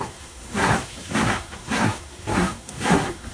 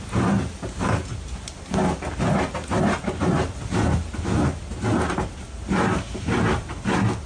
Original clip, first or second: second